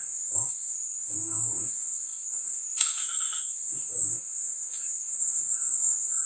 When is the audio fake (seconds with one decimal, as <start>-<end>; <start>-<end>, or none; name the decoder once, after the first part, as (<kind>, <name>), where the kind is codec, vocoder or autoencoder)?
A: 0.0-6.3 (codec, DAC)